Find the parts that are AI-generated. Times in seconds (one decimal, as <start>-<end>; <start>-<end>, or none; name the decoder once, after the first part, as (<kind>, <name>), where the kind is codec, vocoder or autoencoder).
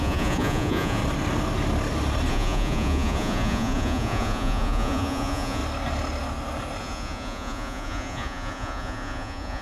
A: 0.0-1.0 (vocoder, Vocos); 2.3-5.6; 6.8-9.6